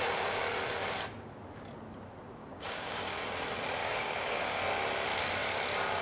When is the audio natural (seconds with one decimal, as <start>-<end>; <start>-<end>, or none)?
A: 0.0-2.4; 3.0-3.8; 4.6-6.0